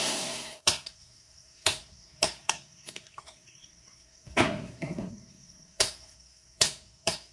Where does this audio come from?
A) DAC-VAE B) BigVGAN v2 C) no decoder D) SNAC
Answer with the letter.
D